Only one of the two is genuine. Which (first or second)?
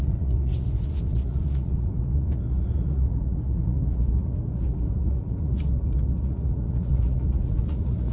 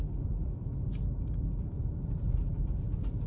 second